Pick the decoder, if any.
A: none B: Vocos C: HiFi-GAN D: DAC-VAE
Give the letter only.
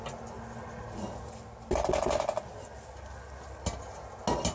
A